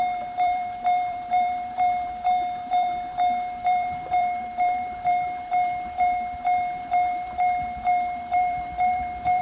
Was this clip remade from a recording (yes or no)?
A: yes